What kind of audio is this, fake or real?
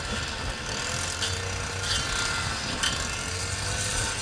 real